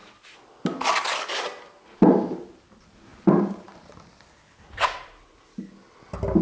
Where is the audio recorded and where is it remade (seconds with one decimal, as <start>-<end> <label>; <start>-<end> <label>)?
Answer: 0.0-3.1 recorded; 3.1-3.9 remade; 3.9-6.4 recorded

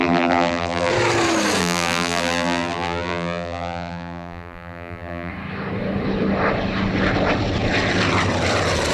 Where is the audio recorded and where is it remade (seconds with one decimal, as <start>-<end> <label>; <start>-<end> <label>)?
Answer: 0.0-0.9 remade; 0.9-1.6 recorded; 1.6-5.3 remade; 5.3-8.9 recorded

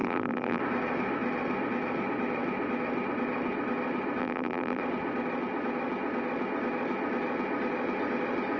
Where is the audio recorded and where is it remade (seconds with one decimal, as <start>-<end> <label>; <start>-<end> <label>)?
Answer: 0.0-0.6 remade; 0.6-4.2 recorded; 4.2-4.8 remade; 4.8-8.6 recorded

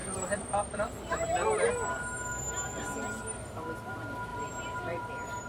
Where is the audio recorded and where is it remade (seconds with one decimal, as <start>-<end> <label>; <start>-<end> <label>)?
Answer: 0.0-1.7 remade; 1.7-4.3 recorded; 4.3-5.1 remade; 5.1-5.5 recorded

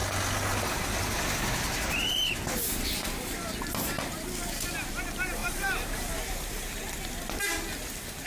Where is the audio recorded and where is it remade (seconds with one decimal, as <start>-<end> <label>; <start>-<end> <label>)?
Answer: 0.0-5.4 recorded; 5.4-6.1 remade; 6.1-8.3 recorded

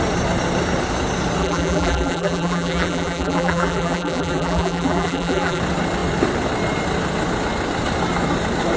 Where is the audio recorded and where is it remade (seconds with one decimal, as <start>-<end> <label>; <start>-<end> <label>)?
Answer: 0.0-1.4 recorded; 1.4-5.6 remade; 5.6-8.8 recorded